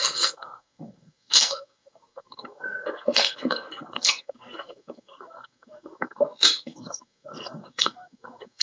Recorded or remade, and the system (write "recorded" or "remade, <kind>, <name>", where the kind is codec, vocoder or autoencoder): remade, codec, SNAC